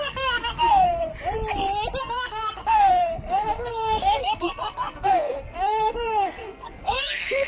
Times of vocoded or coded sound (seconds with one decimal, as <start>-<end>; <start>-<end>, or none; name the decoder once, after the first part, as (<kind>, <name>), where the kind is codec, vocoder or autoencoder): 0.0-1.1 (codec, SNAC); 2.0-7.5